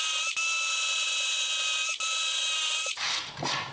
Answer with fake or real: real